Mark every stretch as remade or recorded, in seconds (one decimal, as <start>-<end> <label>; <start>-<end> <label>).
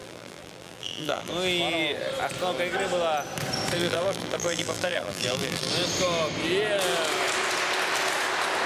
0.0-1.3 remade; 1.3-3.8 recorded; 3.8-5.7 remade; 5.7-8.7 recorded